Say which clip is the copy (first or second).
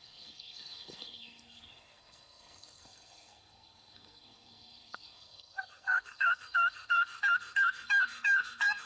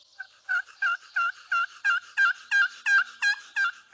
first